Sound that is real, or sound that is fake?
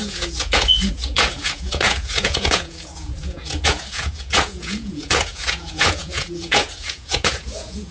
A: fake